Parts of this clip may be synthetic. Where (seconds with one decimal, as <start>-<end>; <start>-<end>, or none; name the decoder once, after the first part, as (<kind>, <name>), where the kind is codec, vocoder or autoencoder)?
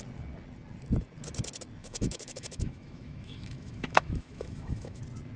1.8-5.0 (autoencoder, DAC-VAE)